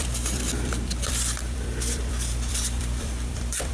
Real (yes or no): no